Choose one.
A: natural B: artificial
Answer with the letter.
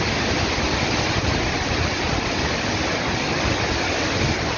A